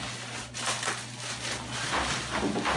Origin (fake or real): real